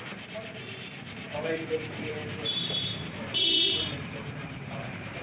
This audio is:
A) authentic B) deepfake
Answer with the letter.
B